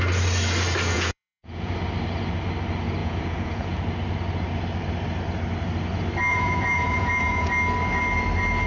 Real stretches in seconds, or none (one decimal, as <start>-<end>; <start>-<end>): 0.0-0.9; 1.7-3.0; 3.8-6.3; 7.5-8.7